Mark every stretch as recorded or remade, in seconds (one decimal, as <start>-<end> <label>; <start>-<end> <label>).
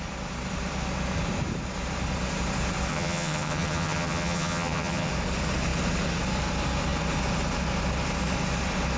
0.0-2.9 recorded; 2.9-5.1 remade; 5.1-9.0 recorded